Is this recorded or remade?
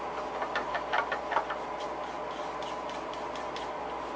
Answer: recorded